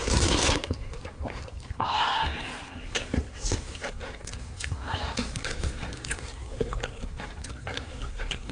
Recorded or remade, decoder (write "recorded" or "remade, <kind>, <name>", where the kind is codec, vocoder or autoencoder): remade, codec, SNAC